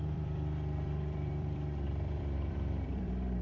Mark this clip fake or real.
fake